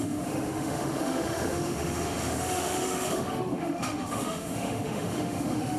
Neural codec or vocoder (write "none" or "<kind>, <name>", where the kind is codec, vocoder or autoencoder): autoencoder, DAC-VAE